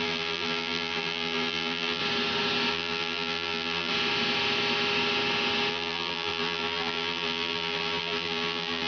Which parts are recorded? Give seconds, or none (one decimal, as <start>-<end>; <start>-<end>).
2.0-2.7; 3.9-5.7